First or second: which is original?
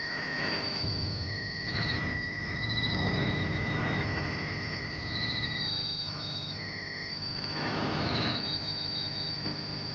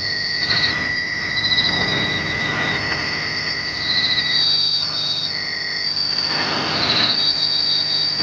second